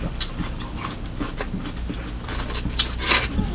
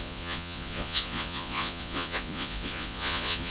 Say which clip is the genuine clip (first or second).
first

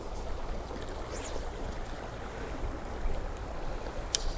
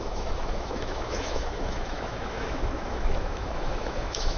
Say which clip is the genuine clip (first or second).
first